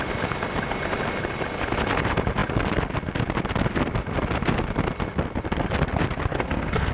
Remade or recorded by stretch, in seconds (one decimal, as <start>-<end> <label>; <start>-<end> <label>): 0.0-6.3 recorded; 6.3-6.9 remade